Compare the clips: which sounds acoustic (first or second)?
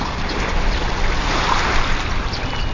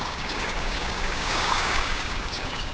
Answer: first